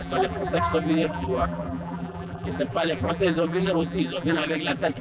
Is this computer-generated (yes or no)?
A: yes